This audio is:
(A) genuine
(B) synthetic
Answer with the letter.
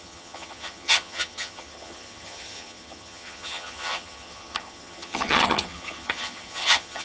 B